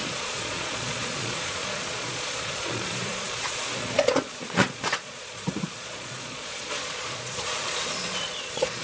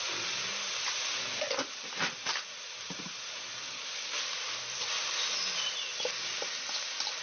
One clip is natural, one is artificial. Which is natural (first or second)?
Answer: second